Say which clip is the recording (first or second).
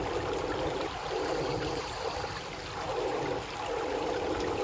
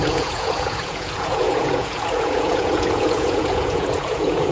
first